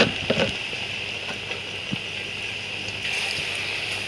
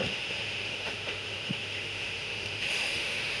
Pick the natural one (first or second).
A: first